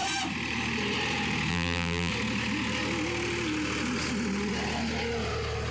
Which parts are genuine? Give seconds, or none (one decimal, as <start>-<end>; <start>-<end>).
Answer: 0.0-1.5; 2.1-5.7